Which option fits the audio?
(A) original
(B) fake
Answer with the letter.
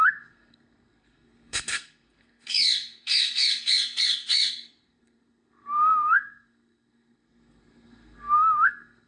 B